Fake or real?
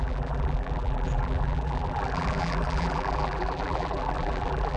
fake